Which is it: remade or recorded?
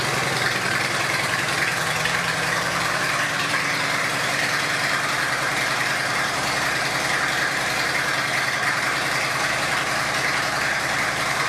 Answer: remade